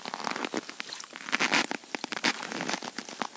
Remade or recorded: recorded